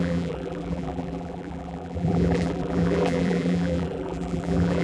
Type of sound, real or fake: fake